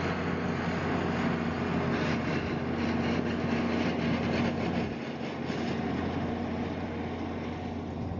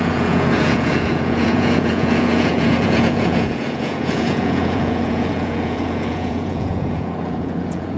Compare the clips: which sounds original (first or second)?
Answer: first